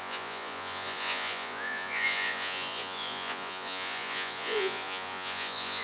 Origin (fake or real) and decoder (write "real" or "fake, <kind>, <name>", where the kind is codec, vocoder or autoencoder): fake, vocoder, Vocos